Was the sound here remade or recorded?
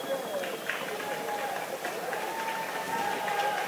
recorded